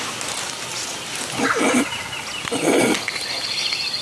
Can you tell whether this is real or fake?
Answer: real